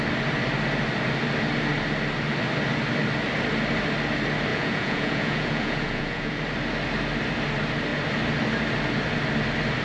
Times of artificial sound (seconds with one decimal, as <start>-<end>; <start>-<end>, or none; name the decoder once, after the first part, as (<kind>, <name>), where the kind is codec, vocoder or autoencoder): 4.5-6.4 (vocoder, Vocos)